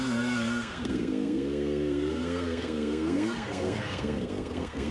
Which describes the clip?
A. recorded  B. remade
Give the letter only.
B